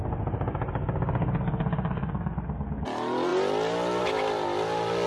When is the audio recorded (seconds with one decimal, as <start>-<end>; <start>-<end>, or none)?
0.0-5.1